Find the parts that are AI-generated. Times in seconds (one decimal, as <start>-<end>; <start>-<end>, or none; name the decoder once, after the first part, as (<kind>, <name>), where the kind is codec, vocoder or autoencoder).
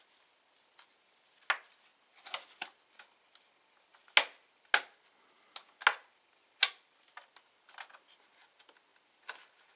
none